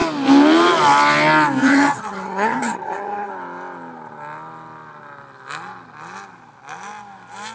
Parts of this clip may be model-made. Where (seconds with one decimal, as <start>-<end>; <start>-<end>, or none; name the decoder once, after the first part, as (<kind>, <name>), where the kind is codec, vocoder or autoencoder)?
1.6-3.3 (vocoder, HiFi-GAN)